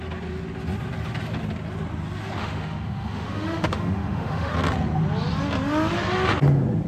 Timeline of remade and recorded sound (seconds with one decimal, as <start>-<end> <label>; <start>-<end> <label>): 0.0-2.4 recorded; 2.4-4.5 remade; 4.5-6.9 recorded